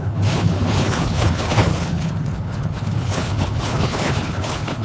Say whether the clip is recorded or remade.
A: remade